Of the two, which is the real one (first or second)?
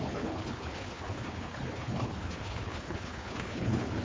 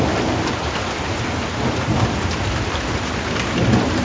second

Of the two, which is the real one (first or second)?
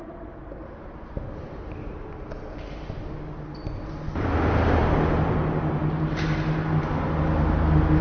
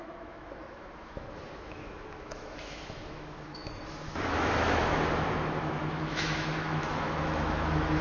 first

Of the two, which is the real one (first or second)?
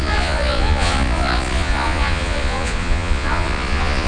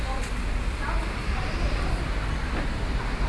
second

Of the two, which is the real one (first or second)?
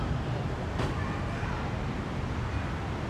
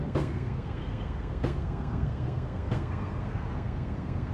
first